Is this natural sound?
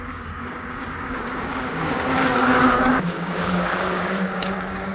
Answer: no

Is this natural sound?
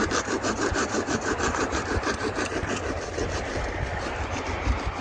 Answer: no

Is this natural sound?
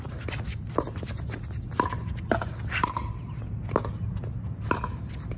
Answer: yes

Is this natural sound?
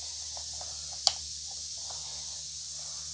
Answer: yes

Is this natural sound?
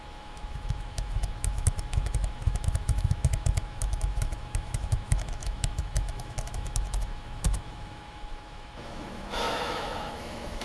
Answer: no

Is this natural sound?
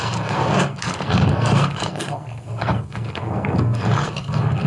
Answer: no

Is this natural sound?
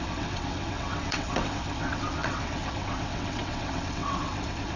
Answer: no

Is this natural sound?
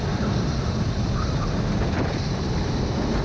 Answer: yes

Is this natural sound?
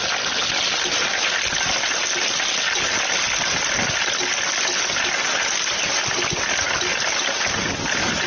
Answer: yes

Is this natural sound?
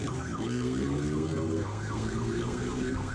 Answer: no